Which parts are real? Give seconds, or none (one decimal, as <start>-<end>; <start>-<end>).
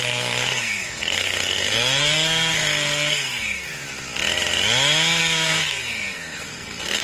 3.7-5.2